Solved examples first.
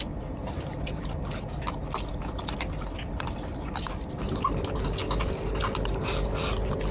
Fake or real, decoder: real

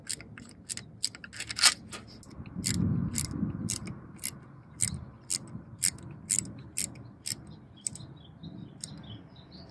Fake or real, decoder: real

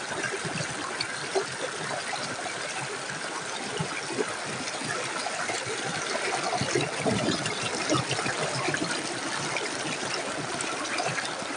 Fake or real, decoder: fake, vocoder, BigVGAN v2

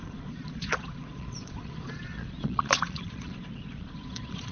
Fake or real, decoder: fake, vocoder, Vocos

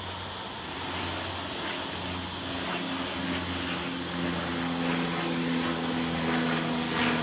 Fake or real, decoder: real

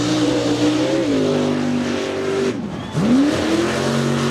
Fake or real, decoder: real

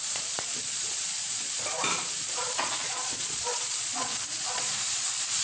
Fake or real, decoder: fake, vocoder, Vocos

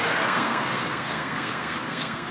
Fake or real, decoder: fake, codec, SNAC